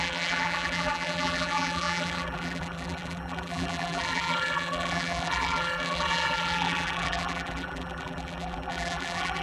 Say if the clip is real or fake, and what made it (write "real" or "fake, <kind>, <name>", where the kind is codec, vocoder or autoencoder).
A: fake, vocoder, BigVGAN v2